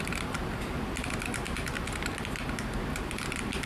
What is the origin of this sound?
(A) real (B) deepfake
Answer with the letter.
A